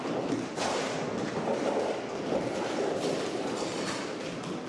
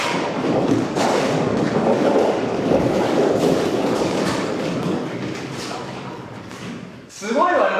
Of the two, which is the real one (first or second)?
first